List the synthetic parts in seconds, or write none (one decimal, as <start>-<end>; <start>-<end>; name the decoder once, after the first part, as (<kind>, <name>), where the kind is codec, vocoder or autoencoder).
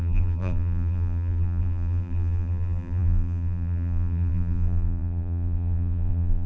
0.0-6.5 (vocoder, BigVGAN v2)